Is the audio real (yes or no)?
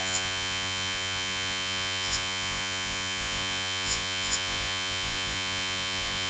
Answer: no